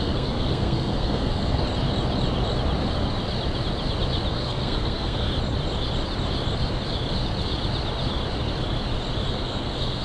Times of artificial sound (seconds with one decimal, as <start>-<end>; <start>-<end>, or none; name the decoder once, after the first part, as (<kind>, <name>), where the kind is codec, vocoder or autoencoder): 0.0-1.6 (codec, SNAC); 4.3-5.3; 9.3-10.0